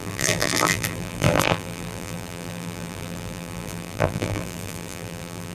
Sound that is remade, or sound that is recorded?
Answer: remade